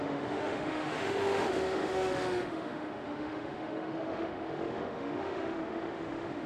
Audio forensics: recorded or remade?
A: remade